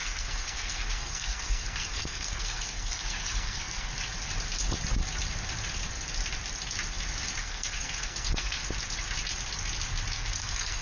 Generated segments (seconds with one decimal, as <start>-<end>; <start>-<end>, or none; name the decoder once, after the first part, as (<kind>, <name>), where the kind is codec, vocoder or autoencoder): 0.0-3.9 (codec, SNAC); 7.4-8.6; 10.1-10.8